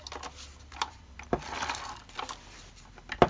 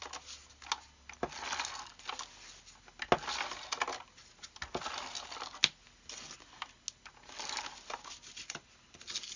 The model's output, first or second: first